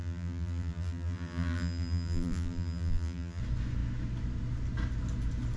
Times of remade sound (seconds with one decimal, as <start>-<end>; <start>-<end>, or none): 0.0-3.4

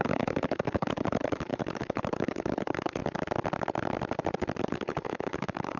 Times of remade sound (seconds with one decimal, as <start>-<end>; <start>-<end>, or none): 0.0-3.0; 4.6-5.8

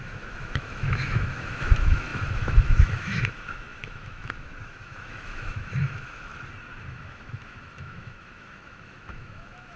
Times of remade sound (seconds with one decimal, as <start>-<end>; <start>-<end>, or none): 0.0-6.3; 6.8-9.8

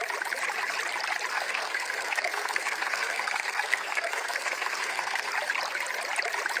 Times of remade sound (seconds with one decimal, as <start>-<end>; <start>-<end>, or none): 1.3-5.3

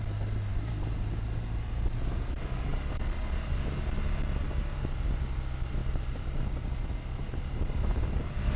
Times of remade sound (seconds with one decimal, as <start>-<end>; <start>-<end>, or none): none

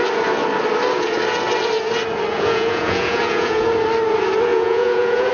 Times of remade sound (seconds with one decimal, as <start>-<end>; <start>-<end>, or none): 2.3-3.7; 4.5-5.3

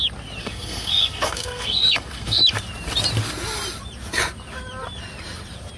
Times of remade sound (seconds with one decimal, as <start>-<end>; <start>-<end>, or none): 0.4-2.4